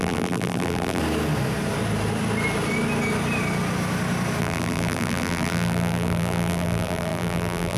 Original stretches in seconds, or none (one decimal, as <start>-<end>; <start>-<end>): 1.0-4.4